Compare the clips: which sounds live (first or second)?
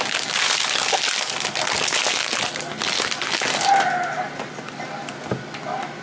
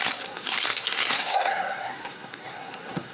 first